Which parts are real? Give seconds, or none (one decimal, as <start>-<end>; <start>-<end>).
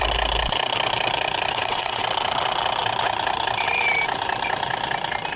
0.0-1.5; 2.0-5.4